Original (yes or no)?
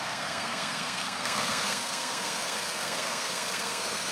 no